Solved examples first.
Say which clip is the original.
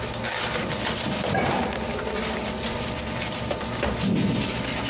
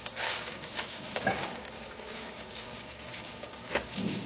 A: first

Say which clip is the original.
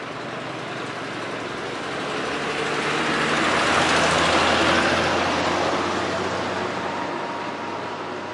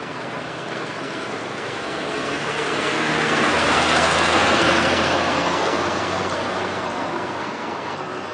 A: first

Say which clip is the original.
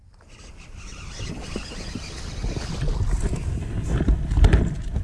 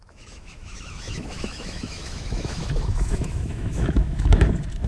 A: first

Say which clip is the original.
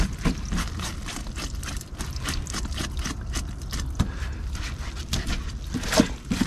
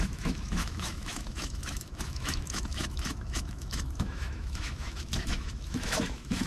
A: first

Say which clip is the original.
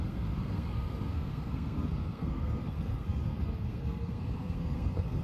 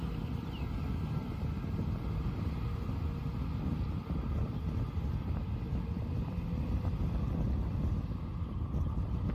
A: second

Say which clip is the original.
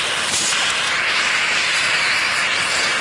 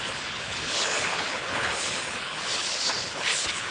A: first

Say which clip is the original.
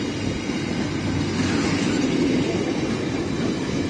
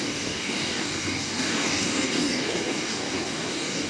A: first